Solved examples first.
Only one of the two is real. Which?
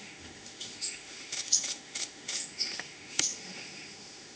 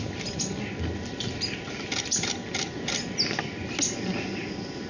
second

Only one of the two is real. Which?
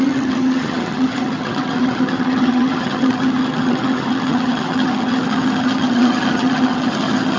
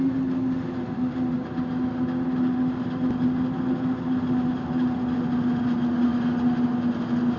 second